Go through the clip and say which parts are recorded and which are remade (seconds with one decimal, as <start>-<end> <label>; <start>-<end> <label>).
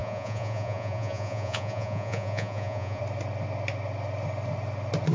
0.0-3.0 remade; 3.0-5.1 recorded